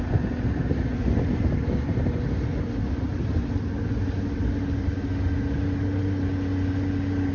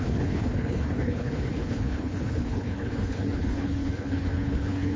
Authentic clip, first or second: first